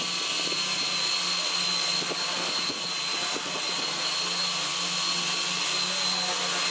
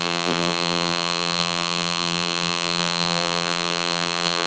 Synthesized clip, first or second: second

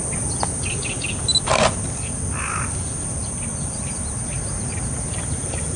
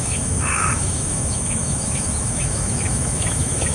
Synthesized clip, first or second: second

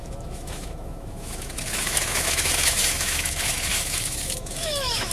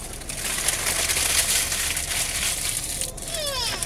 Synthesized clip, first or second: first